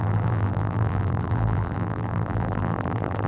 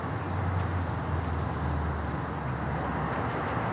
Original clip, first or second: second